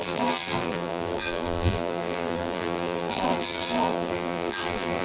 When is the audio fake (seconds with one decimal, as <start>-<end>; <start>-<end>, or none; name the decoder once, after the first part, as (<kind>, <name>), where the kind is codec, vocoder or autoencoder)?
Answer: 0.0-5.0 (vocoder, BigVGAN v2)